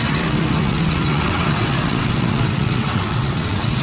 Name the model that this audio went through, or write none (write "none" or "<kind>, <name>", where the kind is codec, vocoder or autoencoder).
vocoder, WaveNeXt